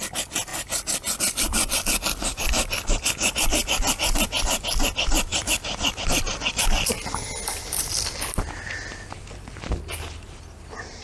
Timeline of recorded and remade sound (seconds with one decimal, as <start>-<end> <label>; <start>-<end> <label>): 0.0-11.0 recorded